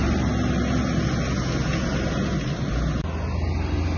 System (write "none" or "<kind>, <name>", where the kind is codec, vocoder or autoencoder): none